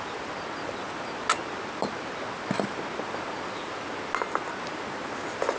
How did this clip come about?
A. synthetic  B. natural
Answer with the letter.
B